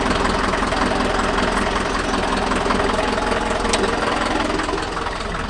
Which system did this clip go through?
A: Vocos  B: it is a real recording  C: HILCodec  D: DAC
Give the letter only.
B